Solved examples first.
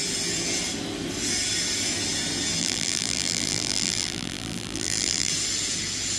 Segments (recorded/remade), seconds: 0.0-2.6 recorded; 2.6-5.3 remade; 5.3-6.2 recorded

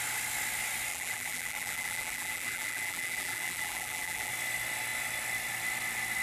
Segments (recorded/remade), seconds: 0.0-0.9 recorded; 0.9-4.3 remade; 4.3-6.2 recorded

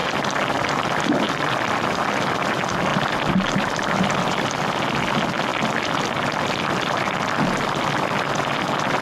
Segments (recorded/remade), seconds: 0.0-2.3 remade; 2.3-2.9 recorded; 2.9-4.6 remade; 4.6-9.0 recorded